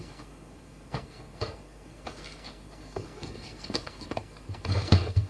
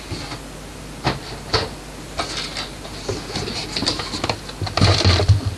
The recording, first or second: second